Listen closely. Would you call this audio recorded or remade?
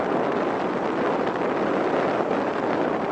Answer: recorded